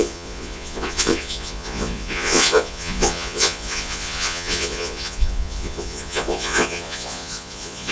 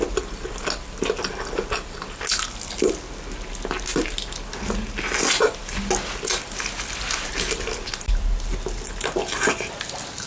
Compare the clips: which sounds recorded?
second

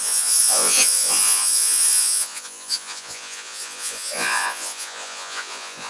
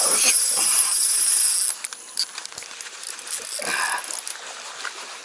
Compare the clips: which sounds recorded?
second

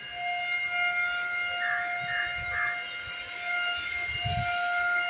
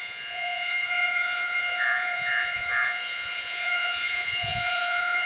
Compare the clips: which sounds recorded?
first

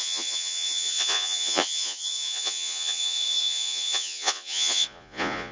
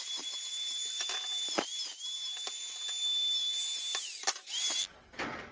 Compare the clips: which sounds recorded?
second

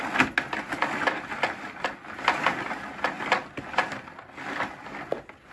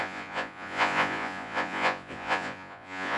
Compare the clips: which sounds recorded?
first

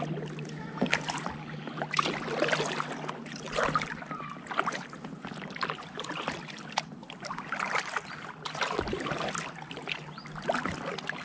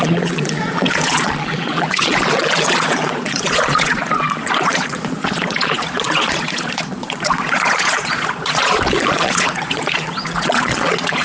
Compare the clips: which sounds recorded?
first